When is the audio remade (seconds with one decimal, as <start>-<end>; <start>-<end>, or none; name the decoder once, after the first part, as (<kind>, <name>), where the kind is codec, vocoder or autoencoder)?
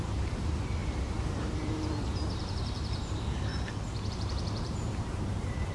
0.0-0.8 (vocoder, BigVGAN v2); 1.3-3.5; 4.1-5.7